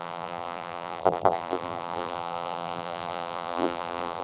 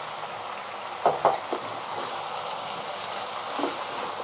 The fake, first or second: first